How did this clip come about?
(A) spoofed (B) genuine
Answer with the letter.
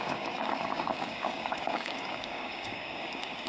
A